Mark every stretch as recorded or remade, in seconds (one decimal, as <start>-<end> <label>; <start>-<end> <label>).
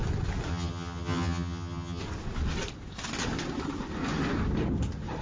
0.0-0.5 recorded; 0.5-2.0 remade; 2.0-5.2 recorded